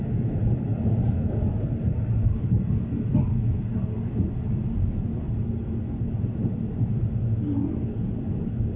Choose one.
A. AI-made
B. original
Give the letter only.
B